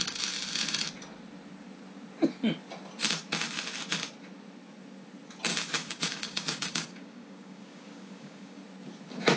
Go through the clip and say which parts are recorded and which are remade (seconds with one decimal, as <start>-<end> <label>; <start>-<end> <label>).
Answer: 0.0-5.5 recorded; 5.5-8.6 remade; 8.6-9.4 recorded